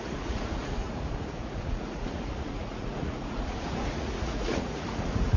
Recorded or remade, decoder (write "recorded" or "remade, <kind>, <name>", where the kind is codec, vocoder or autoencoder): remade, vocoder, Vocos